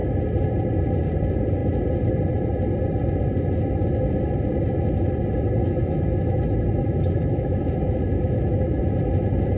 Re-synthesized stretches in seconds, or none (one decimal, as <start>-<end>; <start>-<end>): 5.6-8.8